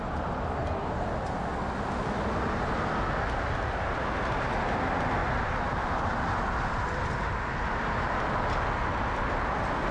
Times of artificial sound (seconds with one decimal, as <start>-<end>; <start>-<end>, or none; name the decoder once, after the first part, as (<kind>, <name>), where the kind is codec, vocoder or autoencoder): none